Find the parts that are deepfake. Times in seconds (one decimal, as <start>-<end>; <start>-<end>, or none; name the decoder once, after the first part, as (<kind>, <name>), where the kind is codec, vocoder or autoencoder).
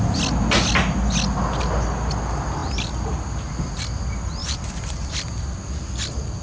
4.4-5.1 (vocoder, BigVGAN v2)